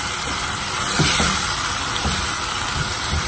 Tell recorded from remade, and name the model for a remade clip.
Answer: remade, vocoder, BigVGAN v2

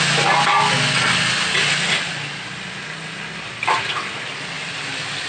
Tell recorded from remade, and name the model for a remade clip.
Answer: recorded